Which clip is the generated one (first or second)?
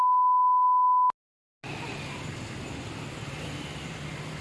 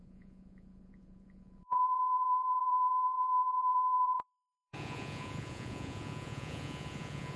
second